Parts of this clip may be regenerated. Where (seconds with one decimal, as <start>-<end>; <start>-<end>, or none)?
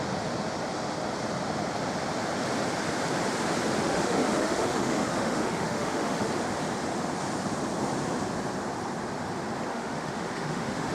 3.8-6.3; 9.7-10.9